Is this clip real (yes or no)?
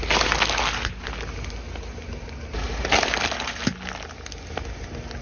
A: yes